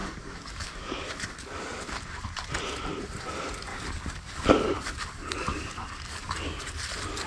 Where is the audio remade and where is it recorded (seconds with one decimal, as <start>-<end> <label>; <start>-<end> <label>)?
0.0-1.6 remade; 1.6-3.7 recorded; 3.7-6.6 remade; 6.6-7.3 recorded